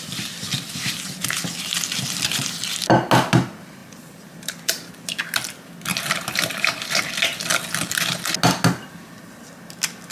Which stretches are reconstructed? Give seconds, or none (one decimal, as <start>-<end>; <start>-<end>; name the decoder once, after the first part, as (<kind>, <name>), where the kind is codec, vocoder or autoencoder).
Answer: 3.8-4.9 (vocoder, BigVGAN v2); 5.9-7.0